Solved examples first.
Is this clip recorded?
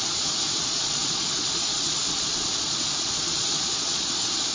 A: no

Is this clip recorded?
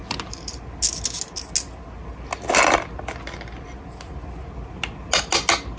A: yes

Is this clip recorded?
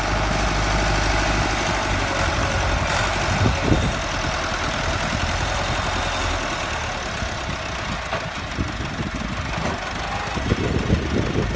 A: yes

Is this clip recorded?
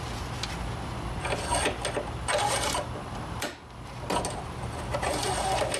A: yes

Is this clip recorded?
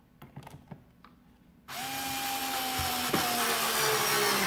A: yes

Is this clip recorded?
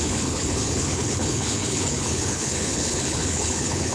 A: no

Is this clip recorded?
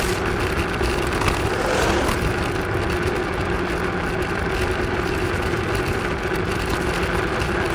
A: yes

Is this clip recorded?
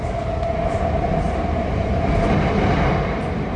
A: no